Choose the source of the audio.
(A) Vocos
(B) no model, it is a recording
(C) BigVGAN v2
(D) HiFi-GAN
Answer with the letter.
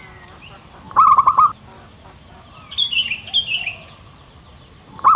B